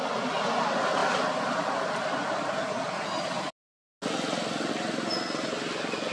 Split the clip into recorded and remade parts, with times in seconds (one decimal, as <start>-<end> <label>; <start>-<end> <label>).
0.0-6.1 recorded